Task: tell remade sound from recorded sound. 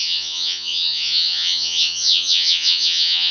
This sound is remade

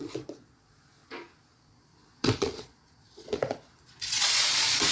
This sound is remade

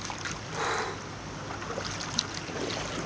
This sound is recorded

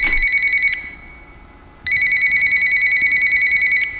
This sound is recorded